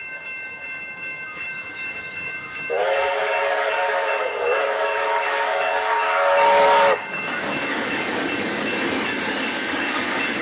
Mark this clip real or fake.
fake